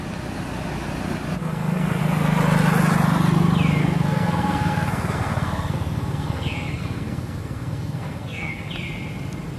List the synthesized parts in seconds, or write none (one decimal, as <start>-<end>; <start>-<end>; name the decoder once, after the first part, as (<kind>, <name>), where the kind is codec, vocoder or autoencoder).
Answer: 1.4-2.0 (codec, SNAC); 3.8-8.7